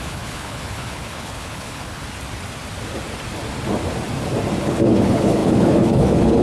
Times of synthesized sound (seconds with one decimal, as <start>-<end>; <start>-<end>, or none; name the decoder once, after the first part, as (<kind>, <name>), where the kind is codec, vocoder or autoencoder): 0.0-2.0 (codec, HILCodec); 4.6-6.4